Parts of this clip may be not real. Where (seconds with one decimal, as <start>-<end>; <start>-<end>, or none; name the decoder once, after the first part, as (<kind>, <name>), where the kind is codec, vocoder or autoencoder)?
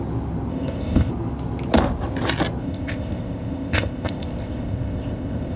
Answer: 0.5-1.1 (codec, ZipCodec); 2.6-5.6